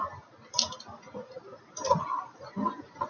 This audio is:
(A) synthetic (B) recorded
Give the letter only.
A